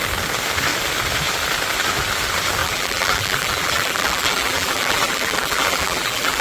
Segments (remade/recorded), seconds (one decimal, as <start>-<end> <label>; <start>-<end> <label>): 0.0-2.6 recorded; 2.6-6.4 remade